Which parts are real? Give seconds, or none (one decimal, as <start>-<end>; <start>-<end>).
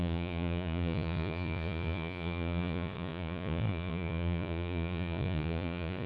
none